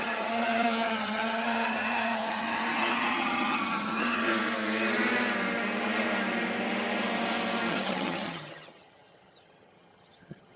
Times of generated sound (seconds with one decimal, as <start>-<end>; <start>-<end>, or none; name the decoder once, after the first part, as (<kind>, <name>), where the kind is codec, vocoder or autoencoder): 0.0-4.3 (vocoder, HiFi-GAN); 7.7-10.6